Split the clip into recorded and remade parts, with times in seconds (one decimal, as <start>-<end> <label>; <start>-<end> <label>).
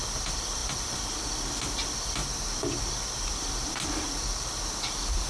0.0-5.3 recorded